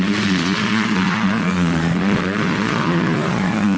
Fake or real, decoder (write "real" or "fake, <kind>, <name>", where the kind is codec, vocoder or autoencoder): fake, vocoder, Vocos